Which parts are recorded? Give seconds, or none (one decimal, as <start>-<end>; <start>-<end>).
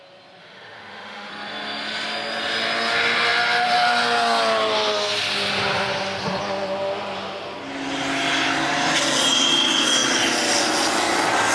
0.0-0.4; 1.3-11.5